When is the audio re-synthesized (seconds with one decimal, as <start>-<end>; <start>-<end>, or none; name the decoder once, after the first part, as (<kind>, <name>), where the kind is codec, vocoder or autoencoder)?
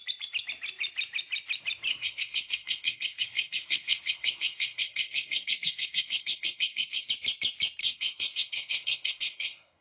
1.9-7.1 (codec, SNAC); 7.8-9.8